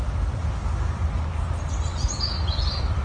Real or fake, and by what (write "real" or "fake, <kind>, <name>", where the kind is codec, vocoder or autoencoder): real